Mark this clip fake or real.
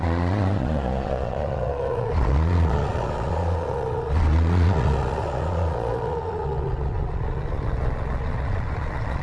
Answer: fake